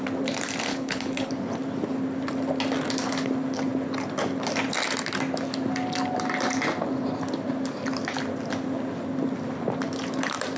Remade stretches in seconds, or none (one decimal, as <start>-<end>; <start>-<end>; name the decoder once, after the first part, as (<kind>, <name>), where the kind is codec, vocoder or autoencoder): 0.7-1.3 (codec, HILCodec)